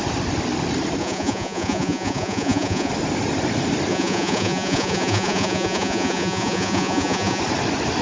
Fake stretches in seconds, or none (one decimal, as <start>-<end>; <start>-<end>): 1.0-2.9; 3.9-7.4